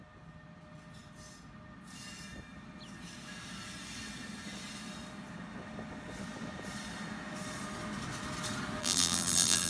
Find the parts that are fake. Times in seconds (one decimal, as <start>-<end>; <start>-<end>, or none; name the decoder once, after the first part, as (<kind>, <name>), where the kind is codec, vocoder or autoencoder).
8.8-9.7 (vocoder, BigVGAN v2)